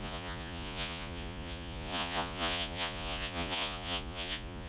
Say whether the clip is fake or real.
fake